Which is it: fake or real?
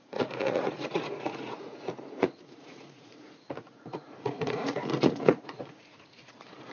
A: fake